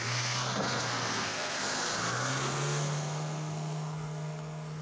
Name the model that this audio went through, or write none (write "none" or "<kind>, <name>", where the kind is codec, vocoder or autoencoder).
codec, SNAC